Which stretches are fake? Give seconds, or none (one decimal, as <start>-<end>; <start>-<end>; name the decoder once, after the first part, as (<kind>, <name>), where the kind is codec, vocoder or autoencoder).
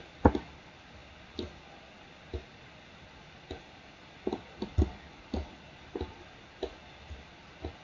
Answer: none